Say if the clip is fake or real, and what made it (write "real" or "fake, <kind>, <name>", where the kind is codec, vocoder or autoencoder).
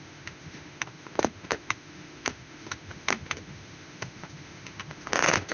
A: fake, autoencoder, DAC-VAE